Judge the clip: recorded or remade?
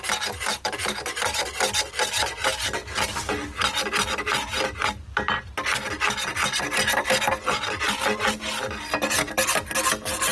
recorded